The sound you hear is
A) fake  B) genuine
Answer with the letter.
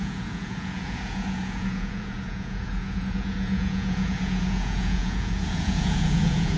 A